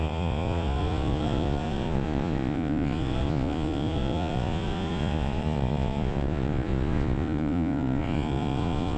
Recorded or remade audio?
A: remade